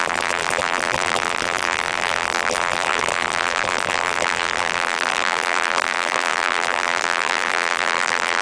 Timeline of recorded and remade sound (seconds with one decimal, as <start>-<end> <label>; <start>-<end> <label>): 0.0-8.4 remade